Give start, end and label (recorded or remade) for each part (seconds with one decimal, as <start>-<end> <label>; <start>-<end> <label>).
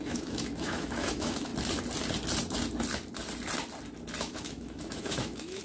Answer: 0.0-1.5 remade; 1.5-4.2 recorded; 4.2-5.6 remade